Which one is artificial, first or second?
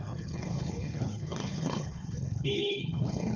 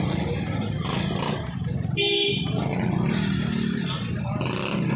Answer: first